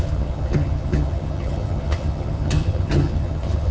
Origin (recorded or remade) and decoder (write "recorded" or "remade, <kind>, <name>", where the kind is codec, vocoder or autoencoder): remade, vocoder, HiFi-GAN